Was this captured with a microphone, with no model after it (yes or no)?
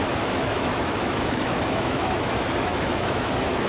no